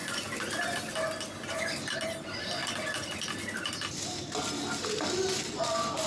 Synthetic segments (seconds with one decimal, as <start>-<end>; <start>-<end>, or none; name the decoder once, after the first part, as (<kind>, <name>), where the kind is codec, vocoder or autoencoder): none